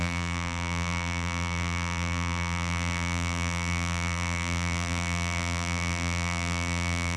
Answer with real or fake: fake